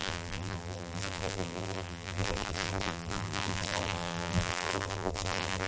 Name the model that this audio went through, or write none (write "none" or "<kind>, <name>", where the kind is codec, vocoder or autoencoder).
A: vocoder, BigVGAN v2